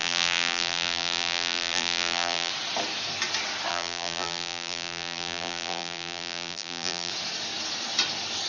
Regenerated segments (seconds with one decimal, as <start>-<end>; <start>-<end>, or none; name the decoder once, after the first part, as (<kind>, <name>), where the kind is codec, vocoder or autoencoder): 0.0-2.5 (vocoder, BigVGAN v2); 3.7-7.1